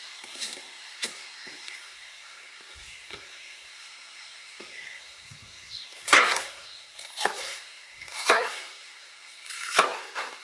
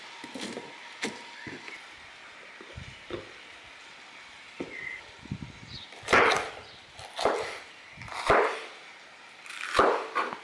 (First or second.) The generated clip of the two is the first